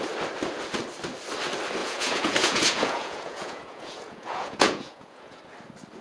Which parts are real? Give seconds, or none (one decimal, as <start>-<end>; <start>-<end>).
0.0-1.8; 5.4-6.0